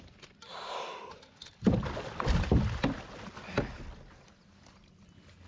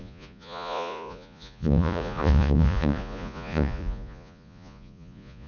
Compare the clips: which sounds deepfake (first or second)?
second